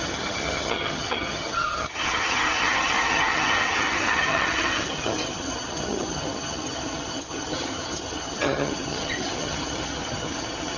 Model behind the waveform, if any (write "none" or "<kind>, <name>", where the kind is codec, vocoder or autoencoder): vocoder, HiFi-GAN